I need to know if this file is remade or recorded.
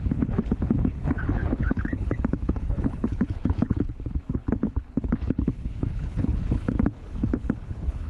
remade